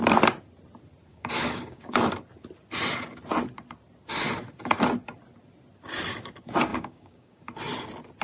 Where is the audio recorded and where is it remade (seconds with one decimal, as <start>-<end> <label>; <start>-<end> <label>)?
0.0-1.1 recorded; 1.1-2.1 remade; 2.1-6.7 recorded; 6.7-7.4 remade; 7.4-8.2 recorded